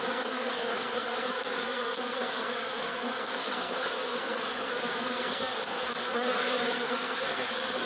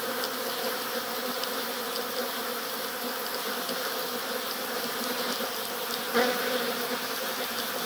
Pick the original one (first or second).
second